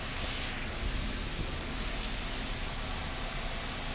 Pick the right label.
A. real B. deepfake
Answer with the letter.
A